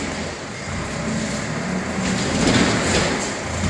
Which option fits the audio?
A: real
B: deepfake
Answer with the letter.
A